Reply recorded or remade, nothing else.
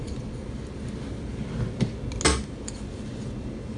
recorded